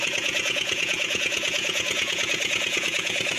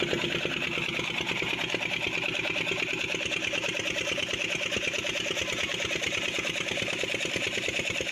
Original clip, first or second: second